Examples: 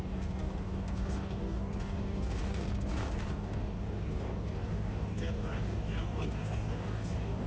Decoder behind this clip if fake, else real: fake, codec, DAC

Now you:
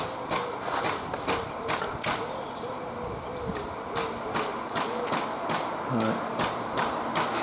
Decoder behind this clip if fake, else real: real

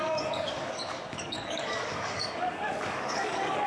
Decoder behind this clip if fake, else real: fake, codec, DAC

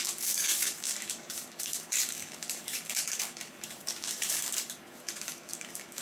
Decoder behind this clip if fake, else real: fake, codec, DAC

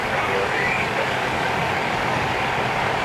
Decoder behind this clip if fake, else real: fake, codec, DAC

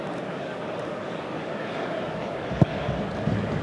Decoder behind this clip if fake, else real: fake, codec, DAC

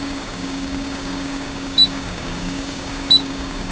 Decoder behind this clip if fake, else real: fake, codec, DAC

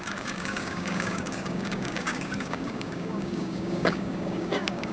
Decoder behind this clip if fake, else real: fake, codec, DAC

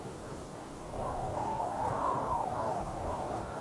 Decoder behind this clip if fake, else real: fake, codec, DAC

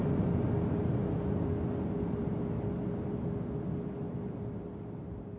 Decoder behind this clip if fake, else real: real